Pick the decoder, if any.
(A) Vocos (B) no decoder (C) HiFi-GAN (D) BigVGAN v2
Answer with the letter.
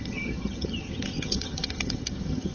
C